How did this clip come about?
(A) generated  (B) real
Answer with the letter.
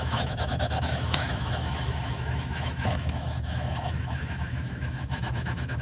A